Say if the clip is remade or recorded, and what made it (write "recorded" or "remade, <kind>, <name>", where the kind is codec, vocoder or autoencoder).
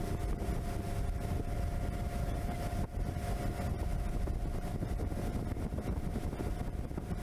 recorded